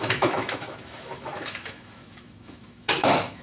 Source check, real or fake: fake